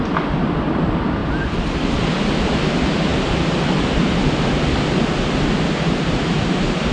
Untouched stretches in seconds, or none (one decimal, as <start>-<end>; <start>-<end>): 0.0-6.9